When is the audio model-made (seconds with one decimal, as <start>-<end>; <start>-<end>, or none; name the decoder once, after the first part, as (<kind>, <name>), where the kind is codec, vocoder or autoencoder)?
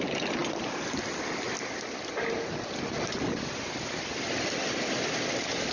none